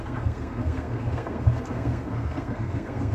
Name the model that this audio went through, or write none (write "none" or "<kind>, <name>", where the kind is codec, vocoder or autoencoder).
codec, SNAC